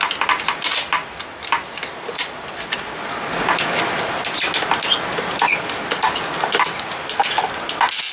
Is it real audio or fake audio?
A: real